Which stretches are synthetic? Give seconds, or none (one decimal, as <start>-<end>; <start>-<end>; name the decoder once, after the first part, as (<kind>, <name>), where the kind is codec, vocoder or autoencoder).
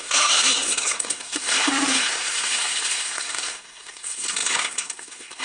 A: 0.0-5.4 (codec, SNAC)